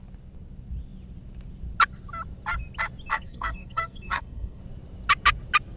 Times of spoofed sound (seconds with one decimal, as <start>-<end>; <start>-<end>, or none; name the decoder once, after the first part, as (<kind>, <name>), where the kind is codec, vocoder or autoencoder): 3.1-4.6 (codec, SNAC)